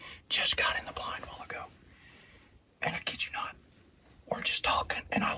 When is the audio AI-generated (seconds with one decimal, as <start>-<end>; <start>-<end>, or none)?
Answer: none